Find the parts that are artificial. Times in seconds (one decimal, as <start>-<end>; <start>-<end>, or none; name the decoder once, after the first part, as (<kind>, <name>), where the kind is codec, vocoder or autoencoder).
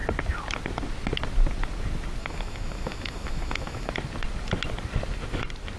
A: 2.2-3.9 (autoencoder, DAC-VAE)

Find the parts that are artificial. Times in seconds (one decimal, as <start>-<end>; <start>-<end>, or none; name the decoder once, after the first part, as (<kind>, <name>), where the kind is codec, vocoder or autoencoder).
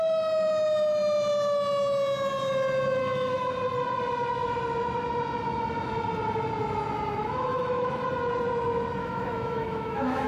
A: 3.0-3.5 (autoencoder, DAC-VAE); 7.2-8.0; 9.0-10.3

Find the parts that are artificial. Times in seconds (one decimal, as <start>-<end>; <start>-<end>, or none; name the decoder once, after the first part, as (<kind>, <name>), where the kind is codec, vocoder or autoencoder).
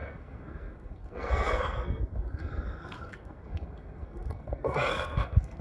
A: 0.0-5.6 (codec, SNAC)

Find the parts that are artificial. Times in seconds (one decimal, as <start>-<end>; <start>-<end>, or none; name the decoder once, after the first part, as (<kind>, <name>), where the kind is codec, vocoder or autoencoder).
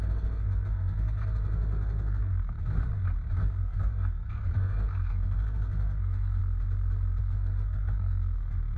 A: 0.0-2.8 (codec, SNAC); 3.6-6.4; 7.2-8.8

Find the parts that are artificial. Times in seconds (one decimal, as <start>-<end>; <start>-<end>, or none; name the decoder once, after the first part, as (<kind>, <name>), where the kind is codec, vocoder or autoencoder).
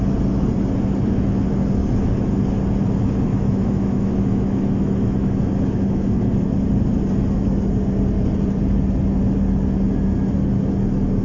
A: 3.3-6.1 (autoencoder, DAC-VAE)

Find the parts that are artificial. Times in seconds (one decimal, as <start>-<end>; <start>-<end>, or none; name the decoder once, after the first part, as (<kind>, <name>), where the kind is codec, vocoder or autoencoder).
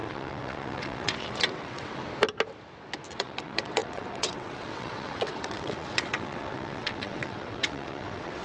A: 0.0-2.0 (vocoder, WaveNeXt); 3.1-8.4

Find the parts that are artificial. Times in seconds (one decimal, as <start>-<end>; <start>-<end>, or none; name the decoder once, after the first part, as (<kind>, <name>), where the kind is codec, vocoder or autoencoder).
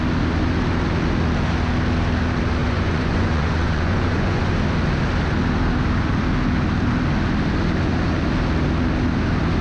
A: 2.6-4.5 (vocoder, Vocos)